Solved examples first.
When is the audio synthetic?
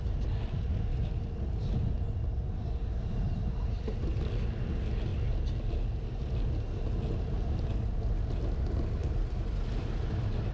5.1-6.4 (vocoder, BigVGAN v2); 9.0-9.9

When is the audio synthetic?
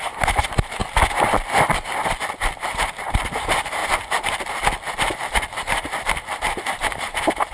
0.0-0.8 (vocoder, BigVGAN v2); 2.4-3.8; 5.1-7.5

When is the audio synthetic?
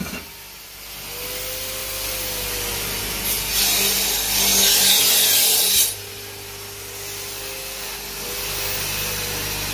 none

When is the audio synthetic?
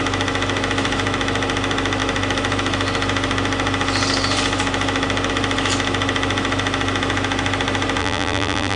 8.0-8.8 (vocoder, BigVGAN v2)